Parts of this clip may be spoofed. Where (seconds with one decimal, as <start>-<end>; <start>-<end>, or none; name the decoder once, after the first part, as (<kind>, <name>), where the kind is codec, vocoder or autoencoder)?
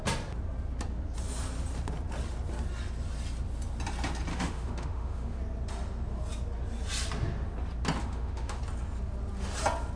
4.3-5.4 (autoencoder, DAC-VAE); 8.0-8.6